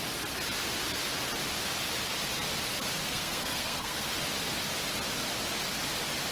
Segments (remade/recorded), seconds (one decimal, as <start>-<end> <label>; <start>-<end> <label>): 0.0-3.0 recorded; 3.0-4.1 remade; 4.1-6.3 recorded